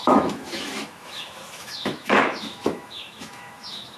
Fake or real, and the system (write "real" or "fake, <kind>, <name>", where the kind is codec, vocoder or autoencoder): fake, autoencoder, DAC-VAE